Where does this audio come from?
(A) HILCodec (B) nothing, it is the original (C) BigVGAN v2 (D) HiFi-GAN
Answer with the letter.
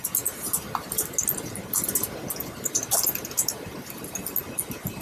B